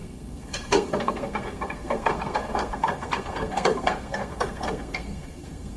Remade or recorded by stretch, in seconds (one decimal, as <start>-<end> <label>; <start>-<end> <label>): 0.0-5.8 remade